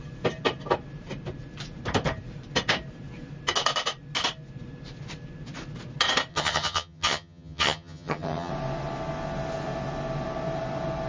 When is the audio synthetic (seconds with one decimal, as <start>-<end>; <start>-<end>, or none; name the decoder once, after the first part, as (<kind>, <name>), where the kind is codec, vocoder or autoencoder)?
6.3-8.5 (vocoder, HiFi-GAN)

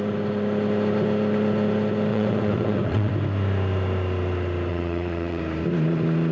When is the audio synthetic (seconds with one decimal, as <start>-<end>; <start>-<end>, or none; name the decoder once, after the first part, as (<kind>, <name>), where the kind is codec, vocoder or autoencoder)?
2.1-3.1 (vocoder, WaveNeXt); 4.7-5.4

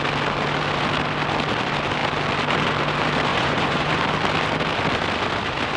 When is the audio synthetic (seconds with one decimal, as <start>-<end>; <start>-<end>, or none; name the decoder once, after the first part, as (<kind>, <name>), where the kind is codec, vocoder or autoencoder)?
3.3-4.0 (vocoder, Vocos)

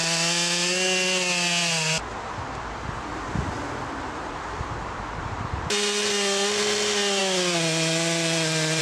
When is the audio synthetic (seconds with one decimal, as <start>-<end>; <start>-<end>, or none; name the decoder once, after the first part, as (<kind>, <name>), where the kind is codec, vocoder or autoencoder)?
none

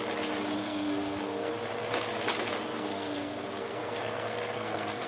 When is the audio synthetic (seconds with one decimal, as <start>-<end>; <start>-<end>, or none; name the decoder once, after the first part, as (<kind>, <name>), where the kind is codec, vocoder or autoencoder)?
0.6-1.5 (codec, SNAC); 2.7-5.1

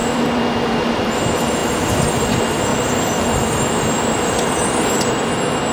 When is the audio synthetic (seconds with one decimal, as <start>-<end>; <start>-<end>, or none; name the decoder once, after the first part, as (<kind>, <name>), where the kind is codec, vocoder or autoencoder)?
0.0-1.1 (vocoder, BigVGAN v2); 1.6-2.1; 2.7-4.8